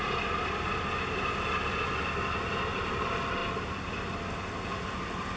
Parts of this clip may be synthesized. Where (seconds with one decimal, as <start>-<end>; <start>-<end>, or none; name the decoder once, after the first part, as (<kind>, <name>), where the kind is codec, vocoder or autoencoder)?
none